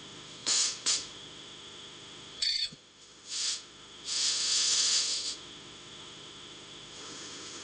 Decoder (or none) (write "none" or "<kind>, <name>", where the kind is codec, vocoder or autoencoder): autoencoder, DAC-VAE